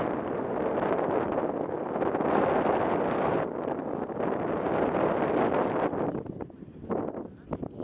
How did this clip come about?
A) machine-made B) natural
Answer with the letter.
B